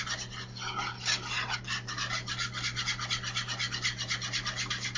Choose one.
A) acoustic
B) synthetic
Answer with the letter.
A